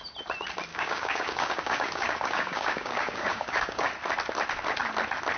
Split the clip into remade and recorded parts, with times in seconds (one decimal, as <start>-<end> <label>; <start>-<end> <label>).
0.0-0.7 recorded; 0.7-3.9 remade; 3.9-5.4 recorded